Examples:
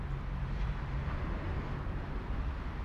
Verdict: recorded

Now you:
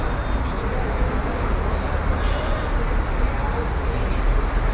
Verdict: recorded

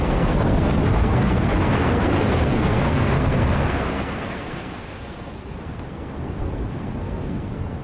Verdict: remade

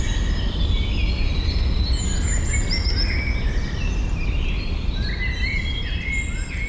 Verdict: recorded